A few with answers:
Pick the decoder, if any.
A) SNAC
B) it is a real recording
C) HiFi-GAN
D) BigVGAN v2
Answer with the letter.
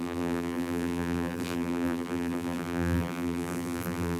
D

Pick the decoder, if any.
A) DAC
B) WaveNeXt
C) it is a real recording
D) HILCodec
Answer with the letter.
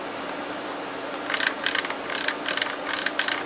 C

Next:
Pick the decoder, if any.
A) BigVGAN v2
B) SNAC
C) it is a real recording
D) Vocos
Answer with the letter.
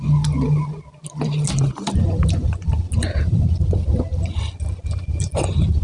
C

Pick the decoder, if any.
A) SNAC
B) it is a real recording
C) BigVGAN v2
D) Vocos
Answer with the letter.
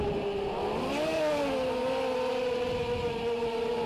B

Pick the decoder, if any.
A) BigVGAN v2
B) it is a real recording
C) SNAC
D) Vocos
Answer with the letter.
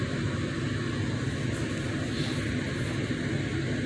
B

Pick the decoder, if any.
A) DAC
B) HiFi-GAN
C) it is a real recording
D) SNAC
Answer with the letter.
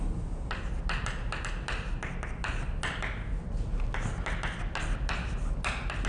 C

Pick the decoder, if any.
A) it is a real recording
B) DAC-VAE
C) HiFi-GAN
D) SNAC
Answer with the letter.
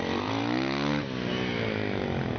A